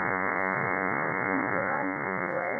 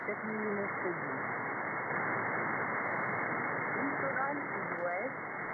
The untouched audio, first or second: second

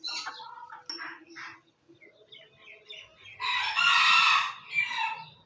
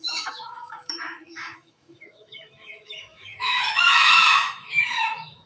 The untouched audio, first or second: first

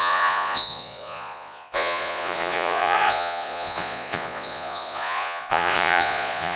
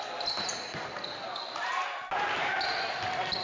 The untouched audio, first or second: second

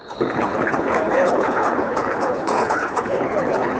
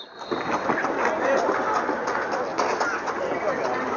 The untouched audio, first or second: second